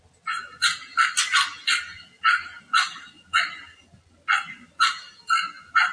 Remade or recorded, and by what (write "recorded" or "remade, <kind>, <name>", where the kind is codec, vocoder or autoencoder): recorded